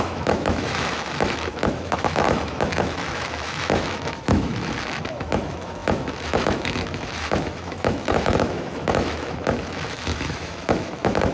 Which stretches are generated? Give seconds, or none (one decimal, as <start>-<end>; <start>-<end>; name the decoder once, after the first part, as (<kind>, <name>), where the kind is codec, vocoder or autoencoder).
0.0-11.3 (autoencoder, DAC-VAE)